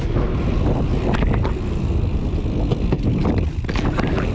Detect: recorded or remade recorded